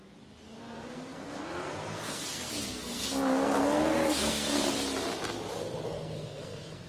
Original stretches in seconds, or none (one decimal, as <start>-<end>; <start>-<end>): 0.0-0.6; 4.7-5.6